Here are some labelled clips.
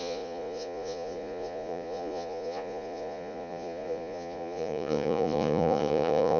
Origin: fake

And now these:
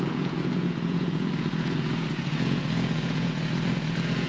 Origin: fake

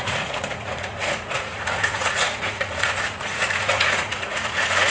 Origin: fake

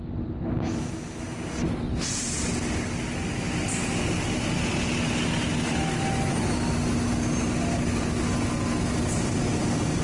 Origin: real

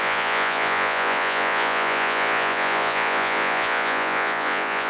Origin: fake